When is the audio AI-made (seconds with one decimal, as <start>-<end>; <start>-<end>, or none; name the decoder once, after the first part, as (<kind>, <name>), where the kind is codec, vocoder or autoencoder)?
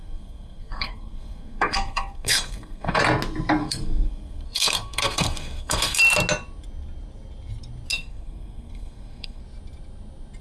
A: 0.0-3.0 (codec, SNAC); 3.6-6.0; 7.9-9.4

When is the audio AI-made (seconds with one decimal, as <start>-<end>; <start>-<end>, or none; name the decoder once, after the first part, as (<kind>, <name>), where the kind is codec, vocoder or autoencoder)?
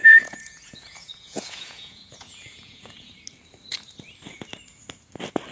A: 0.0-3.1 (vocoder, Vocos)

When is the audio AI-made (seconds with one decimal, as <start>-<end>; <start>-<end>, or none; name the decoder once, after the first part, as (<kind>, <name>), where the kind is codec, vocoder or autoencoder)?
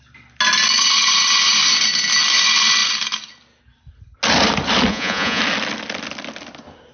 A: 4.9-5.4 (vocoder, Vocos)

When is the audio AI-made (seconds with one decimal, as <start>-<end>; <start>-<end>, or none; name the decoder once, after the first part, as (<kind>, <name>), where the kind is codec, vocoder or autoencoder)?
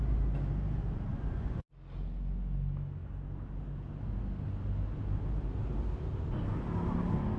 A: 1.1-1.7 (vocoder, Vocos)